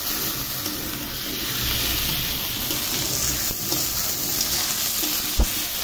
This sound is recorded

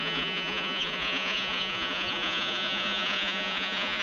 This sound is remade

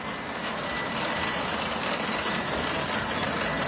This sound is recorded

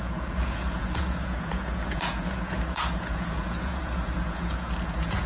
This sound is remade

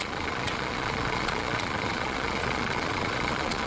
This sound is remade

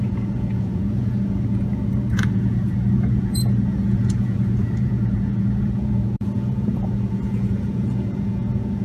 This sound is remade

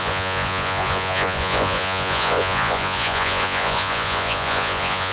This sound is remade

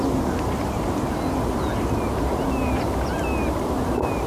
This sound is recorded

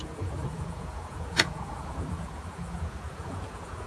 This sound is remade